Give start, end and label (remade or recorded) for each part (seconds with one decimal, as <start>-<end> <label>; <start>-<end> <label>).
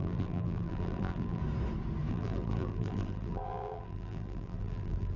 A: 0.0-1.4 remade; 1.4-2.1 recorded; 2.1-5.2 remade